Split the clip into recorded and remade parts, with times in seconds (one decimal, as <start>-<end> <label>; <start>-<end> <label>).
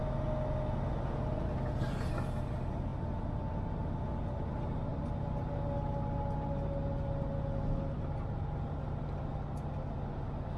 0.0-10.6 recorded